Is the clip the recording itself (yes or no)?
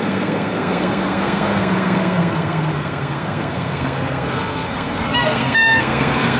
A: no